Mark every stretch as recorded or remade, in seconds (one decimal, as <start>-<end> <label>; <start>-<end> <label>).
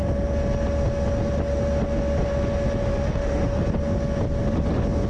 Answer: 0.0-2.9 recorded; 2.9-3.6 remade; 3.6-5.1 recorded